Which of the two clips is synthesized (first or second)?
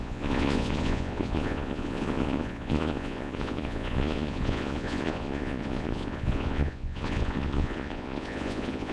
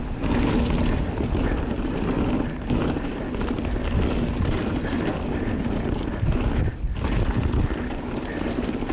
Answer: first